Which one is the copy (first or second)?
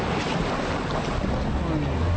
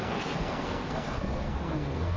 second